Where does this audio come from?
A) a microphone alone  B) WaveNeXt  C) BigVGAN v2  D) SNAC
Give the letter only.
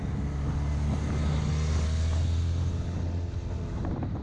A